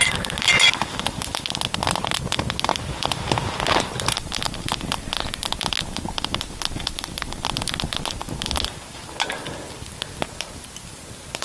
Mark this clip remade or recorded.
recorded